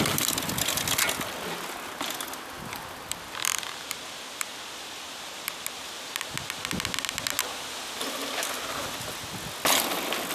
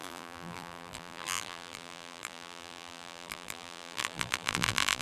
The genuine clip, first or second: first